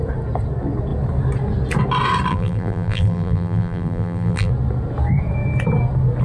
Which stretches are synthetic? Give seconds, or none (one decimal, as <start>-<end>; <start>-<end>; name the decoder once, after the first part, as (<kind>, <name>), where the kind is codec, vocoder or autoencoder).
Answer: 2.3-4.5 (vocoder, BigVGAN v2)